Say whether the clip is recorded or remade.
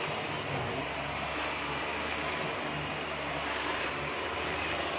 recorded